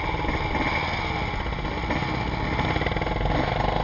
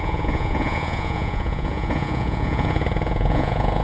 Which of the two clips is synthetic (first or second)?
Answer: second